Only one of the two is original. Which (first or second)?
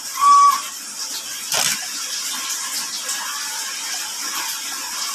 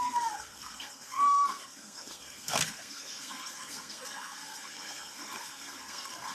first